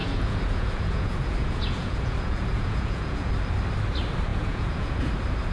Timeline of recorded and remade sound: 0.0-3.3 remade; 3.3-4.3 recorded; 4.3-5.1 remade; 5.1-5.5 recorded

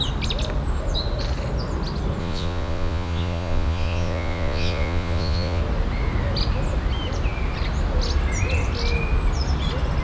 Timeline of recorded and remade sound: 0.0-2.2 recorded; 2.2-5.6 remade; 5.6-10.0 recorded

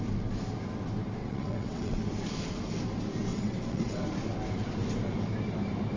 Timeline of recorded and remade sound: 0.0-1.2 recorded; 1.2-2.0 remade; 2.0-3.3 recorded; 3.3-4.0 remade; 4.0-6.0 recorded

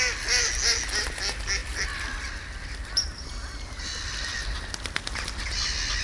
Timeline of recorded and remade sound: 0.0-6.0 recorded

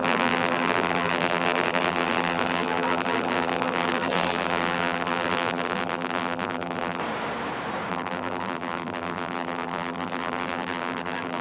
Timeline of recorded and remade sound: 0.0-7.0 remade; 7.0-7.9 recorded; 7.9-11.4 remade

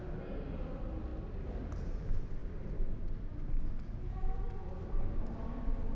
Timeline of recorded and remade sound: 0.0-6.0 recorded

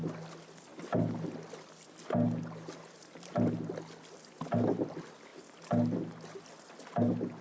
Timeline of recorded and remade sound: 0.0-7.4 recorded

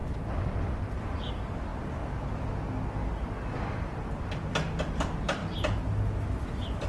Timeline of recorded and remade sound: 0.0-1.0 recorded; 1.0-1.7 remade; 1.7-4.9 recorded; 4.9-5.4 remade; 5.4-6.2 recorded; 6.2-6.9 remade